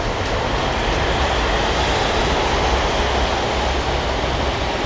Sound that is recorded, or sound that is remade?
recorded